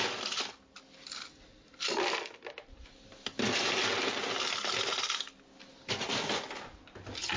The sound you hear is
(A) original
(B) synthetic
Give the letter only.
A